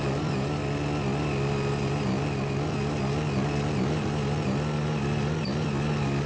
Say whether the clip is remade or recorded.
recorded